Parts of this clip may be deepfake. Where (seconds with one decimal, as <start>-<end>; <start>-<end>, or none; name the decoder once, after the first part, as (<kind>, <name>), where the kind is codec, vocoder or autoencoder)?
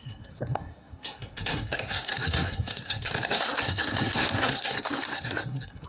0.0-5.9 (codec, SNAC)